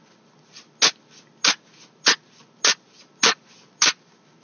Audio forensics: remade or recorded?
recorded